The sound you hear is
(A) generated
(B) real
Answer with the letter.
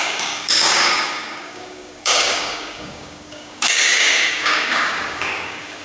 A